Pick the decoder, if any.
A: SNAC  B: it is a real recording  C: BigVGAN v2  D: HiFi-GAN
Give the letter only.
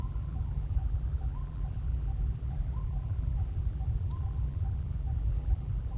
C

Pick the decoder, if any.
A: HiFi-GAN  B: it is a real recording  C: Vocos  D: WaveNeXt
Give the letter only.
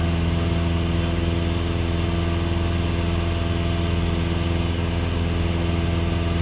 B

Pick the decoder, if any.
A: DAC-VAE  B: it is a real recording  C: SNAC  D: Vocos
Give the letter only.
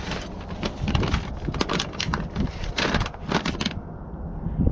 B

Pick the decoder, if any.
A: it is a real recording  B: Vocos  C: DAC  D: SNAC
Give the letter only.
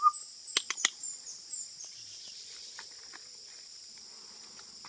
A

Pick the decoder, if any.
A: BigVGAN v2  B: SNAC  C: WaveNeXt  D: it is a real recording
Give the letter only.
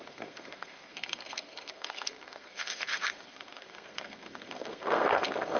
B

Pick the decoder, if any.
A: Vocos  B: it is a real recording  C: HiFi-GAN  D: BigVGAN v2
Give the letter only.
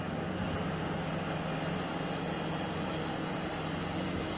B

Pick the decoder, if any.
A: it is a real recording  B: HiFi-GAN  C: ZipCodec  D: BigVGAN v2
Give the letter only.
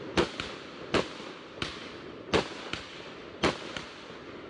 A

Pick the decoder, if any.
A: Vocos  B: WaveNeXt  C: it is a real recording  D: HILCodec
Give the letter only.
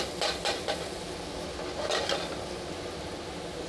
C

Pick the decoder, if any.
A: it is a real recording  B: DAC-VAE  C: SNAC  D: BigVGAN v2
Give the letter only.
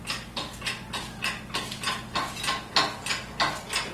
A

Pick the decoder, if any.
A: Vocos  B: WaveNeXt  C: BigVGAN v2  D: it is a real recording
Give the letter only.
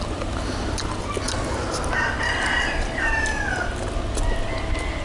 D